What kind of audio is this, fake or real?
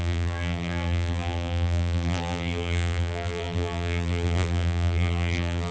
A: fake